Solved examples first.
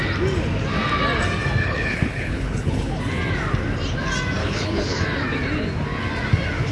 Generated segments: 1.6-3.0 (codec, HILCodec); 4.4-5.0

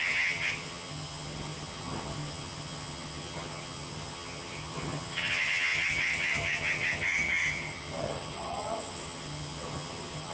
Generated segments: 0.0-10.3 (vocoder, HiFi-GAN)

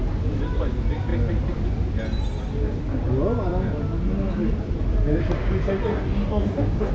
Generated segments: 5.9-6.9 (codec, DAC)